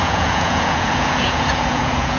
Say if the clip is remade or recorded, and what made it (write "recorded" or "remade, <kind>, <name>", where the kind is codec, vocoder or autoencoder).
remade, vocoder, Vocos